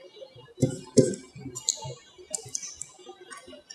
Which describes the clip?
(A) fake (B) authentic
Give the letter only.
B